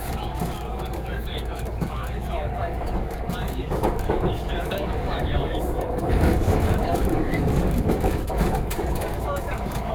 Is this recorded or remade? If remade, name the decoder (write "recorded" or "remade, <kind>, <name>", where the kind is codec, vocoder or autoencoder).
remade, codec, DAC